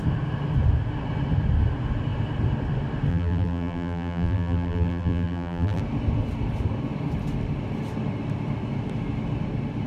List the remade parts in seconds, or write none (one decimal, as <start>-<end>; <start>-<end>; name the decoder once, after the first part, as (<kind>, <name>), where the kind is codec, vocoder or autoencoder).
3.1-5.8 (vocoder, BigVGAN v2)